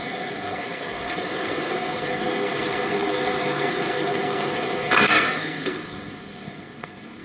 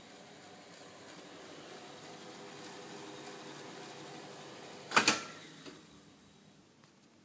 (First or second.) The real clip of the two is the second